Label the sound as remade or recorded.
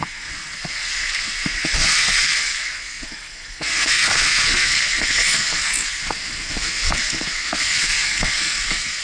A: remade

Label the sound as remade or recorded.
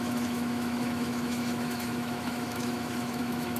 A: remade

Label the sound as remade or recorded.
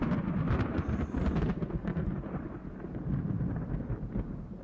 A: recorded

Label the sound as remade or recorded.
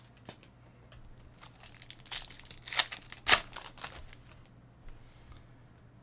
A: recorded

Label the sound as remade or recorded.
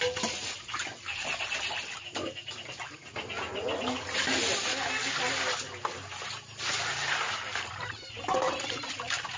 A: recorded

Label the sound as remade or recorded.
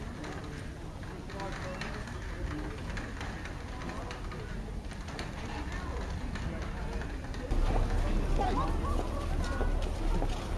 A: recorded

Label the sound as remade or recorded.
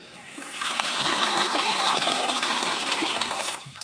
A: remade